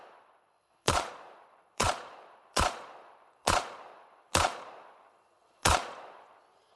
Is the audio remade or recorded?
remade